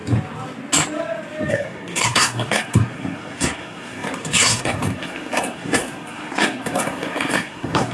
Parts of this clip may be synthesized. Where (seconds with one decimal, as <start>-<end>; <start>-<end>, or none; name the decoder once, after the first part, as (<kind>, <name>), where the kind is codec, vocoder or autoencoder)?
1.5-7.9 (codec, SNAC)